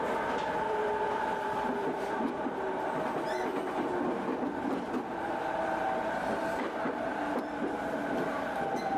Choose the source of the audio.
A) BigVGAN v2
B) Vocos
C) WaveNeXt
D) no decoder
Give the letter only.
A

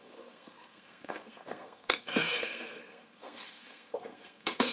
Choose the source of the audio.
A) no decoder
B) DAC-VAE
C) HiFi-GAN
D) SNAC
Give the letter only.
D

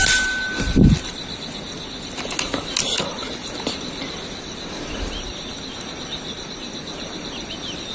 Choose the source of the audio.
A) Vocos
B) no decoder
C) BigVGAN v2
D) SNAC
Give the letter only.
B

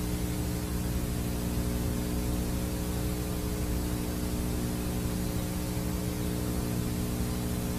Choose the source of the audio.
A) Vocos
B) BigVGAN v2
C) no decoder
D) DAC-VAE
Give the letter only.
C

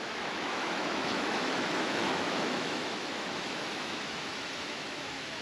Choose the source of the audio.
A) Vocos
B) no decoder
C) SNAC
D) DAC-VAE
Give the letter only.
D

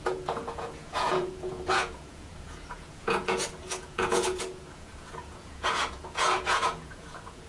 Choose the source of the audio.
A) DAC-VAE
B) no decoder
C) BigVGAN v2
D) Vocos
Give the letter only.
D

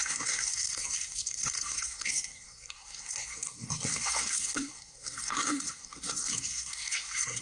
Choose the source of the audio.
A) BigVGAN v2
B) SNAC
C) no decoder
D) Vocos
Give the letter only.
B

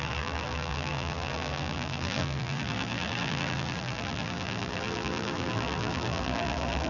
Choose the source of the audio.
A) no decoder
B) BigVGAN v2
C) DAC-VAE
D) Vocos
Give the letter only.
B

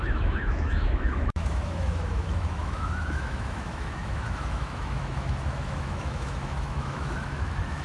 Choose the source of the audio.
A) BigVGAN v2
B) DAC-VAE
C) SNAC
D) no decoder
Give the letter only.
B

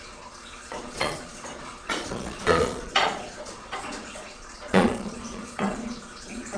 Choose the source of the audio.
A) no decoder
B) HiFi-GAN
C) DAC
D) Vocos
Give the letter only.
D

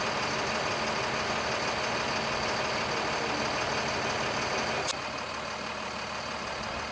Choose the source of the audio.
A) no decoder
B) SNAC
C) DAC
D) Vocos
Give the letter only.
A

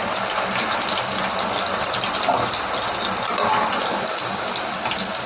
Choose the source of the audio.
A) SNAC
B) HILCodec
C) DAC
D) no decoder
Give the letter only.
D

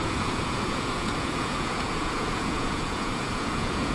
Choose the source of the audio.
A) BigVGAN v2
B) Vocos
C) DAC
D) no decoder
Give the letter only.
B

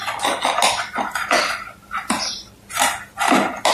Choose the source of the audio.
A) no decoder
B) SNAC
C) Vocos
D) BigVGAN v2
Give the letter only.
A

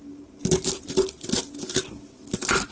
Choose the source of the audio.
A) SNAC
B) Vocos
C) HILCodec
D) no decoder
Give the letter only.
D